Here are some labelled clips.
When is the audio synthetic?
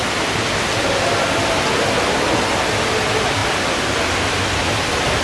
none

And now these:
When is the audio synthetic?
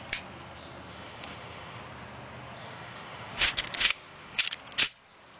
0.9-1.8 (autoencoder, DAC-VAE); 2.6-4.4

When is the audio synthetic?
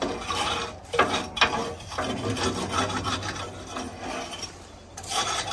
none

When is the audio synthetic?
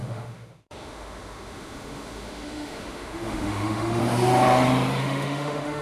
0.0-4.0 (autoencoder, DAC-VAE); 5.0-5.8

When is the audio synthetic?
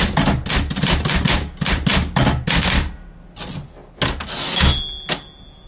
none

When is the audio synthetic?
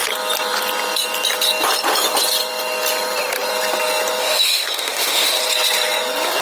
4.2-5.4 (autoencoder, DAC-VAE)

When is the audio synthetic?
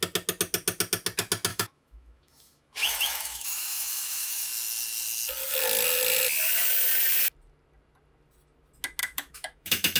1.5-4.5 (autoencoder, DAC-VAE); 9.0-10.0